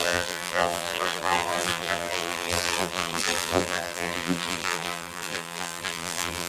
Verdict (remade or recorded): remade